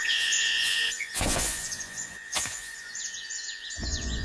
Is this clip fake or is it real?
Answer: fake